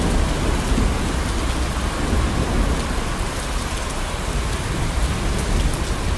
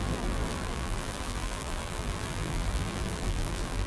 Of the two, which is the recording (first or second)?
first